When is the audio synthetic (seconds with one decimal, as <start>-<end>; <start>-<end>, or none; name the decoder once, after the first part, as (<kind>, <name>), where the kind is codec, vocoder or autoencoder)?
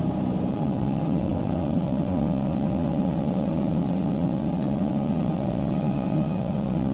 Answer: 0.5-6.9 (vocoder, WaveNeXt)